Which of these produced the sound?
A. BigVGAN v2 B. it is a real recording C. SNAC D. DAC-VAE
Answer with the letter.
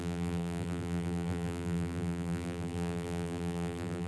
A